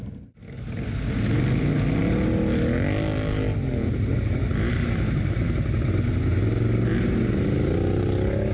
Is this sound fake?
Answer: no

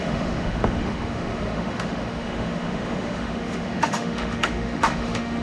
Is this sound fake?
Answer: yes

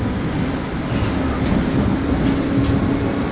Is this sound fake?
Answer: no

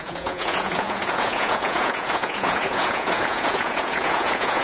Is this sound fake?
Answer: yes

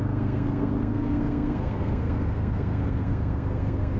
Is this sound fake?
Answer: yes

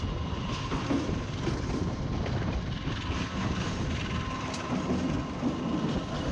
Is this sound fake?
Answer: no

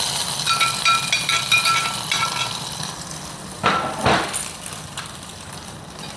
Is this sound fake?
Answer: no